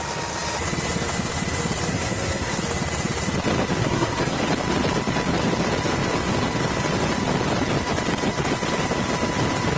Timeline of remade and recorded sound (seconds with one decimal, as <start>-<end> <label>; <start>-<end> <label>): 0.0-1.9 recorded; 1.9-2.6 remade; 2.6-3.8 recorded; 3.8-4.4 remade; 4.4-9.8 recorded